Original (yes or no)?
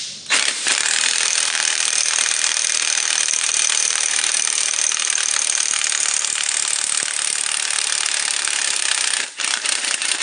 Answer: no